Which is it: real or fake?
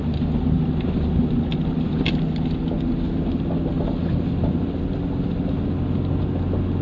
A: real